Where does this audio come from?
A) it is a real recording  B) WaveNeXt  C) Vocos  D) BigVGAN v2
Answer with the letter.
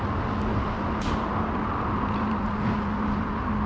A